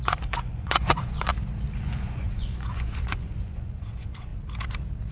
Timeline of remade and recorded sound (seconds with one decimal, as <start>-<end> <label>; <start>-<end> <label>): 0.0-1.3 remade; 1.3-1.8 recorded; 1.8-4.3 remade; 4.3-5.1 recorded